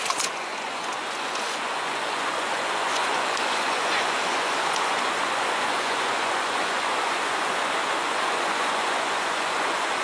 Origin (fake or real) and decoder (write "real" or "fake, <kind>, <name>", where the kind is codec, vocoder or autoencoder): fake, vocoder, Vocos